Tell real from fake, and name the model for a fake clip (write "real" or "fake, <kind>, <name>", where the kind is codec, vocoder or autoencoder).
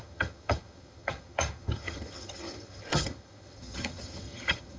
fake, vocoder, HiFi-GAN